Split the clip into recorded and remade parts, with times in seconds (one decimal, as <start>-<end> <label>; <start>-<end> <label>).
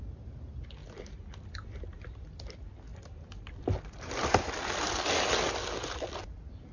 0.0-2.9 recorded; 2.9-4.5 remade; 4.5-6.7 recorded